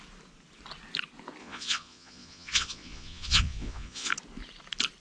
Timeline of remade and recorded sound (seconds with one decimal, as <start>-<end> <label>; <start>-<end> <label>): 0.0-1.4 recorded; 1.4-4.1 remade; 4.1-5.0 recorded